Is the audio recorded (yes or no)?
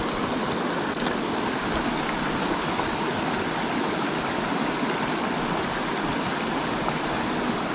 yes